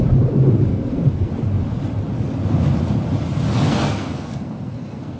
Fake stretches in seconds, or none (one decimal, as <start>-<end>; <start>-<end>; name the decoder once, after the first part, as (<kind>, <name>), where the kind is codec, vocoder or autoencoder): 0.7-1.3 (codec, SNAC); 3.5-5.2